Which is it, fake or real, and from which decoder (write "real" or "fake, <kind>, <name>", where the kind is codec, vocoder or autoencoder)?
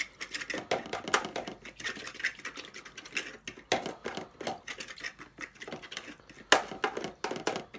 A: real